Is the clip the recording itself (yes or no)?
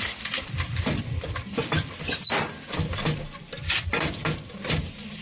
yes